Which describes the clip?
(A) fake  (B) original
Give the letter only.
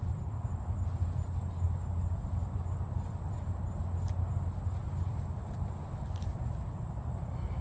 B